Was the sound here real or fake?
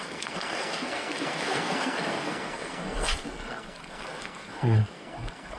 fake